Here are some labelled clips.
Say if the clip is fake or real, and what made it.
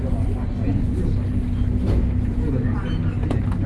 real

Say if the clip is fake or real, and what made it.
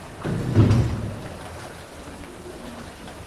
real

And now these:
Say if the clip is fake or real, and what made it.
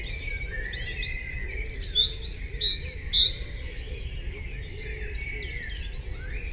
real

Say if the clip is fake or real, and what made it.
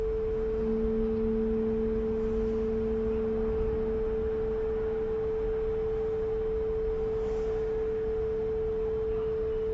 real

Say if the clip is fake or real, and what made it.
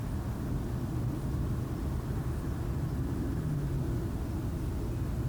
real